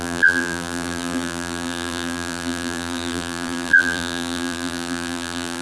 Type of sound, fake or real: fake